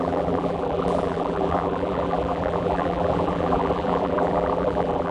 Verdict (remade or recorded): remade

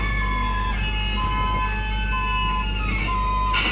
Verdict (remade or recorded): recorded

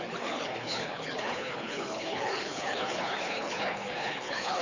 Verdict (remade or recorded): remade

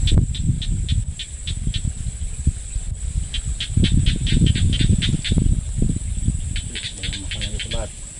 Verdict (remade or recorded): recorded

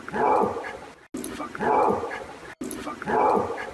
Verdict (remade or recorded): recorded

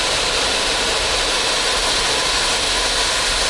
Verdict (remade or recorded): recorded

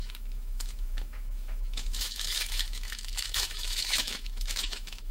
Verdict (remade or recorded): remade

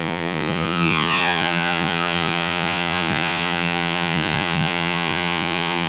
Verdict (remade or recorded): remade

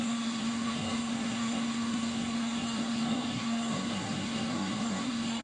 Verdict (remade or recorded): remade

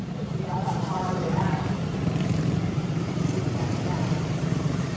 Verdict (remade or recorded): remade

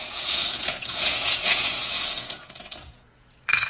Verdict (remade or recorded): remade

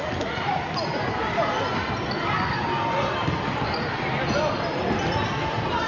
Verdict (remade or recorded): recorded